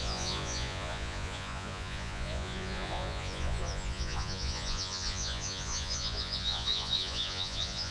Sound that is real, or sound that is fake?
fake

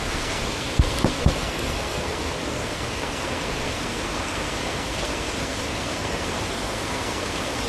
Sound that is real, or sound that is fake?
fake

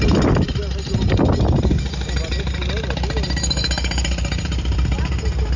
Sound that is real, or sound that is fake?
real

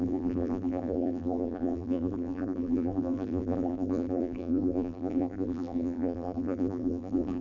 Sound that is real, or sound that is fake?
fake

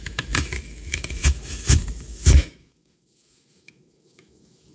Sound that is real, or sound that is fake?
fake